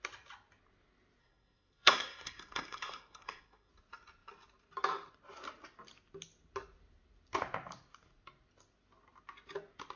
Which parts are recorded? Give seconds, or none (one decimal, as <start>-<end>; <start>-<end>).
0.0-1.2; 3.7-10.0